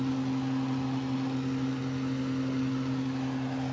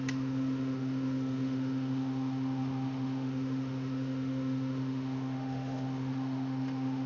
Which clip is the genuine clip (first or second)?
first